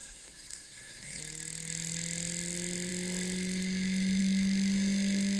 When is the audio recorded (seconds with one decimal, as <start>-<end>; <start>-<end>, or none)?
1.2-5.4